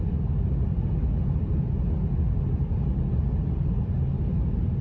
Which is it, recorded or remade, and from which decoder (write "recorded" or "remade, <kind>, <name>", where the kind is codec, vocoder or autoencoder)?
recorded